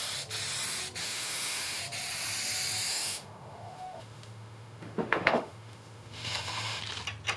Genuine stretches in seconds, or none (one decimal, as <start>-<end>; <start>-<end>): 0.0-1.0; 1.8-2.9; 6.8-7.4